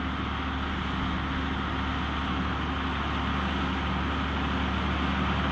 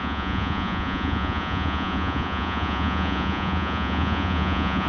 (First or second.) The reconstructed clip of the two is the second